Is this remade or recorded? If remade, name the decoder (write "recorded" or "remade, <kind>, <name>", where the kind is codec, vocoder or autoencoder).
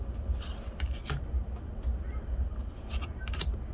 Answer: recorded